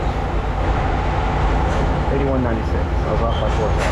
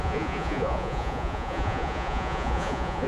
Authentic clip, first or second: first